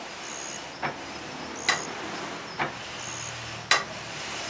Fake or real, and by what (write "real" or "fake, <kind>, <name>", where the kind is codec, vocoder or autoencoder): real